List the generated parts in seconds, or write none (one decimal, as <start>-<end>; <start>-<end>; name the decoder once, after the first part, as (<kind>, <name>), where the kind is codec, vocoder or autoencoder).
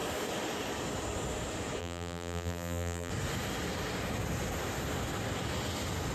1.8-3.1 (vocoder, BigVGAN v2)